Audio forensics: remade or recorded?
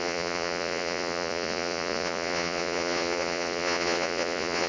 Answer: remade